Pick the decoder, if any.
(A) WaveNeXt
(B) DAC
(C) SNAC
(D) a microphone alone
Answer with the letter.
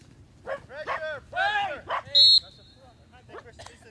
D